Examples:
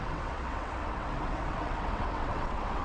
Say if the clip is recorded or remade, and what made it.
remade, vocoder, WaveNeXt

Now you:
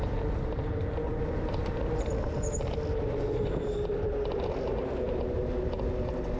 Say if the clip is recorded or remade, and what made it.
recorded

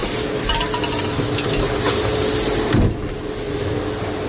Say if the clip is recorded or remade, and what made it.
recorded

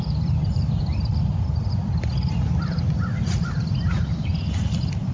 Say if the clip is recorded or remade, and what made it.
remade, vocoder, BigVGAN v2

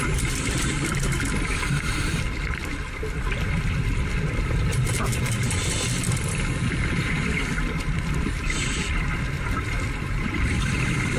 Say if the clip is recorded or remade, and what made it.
remade, vocoder, BigVGAN v2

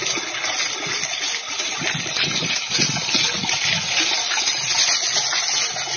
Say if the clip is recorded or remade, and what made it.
recorded